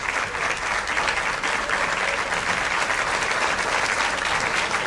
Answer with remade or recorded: recorded